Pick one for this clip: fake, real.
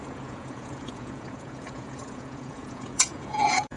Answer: fake